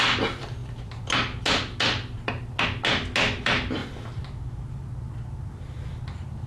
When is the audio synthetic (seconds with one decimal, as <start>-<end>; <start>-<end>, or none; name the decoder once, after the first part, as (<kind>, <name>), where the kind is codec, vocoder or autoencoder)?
none